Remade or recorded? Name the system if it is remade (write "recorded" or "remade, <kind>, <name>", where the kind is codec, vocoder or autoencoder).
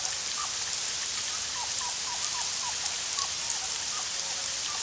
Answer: recorded